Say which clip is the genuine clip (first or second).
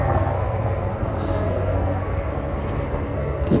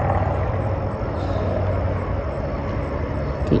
second